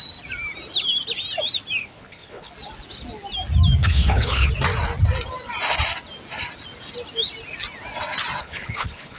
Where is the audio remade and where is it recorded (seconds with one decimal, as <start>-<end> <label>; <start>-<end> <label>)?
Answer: 0.0-1.8 recorded; 1.8-2.5 remade; 2.5-3.8 recorded; 3.8-4.5 remade; 4.5-8.4 recorded; 8.4-9.2 remade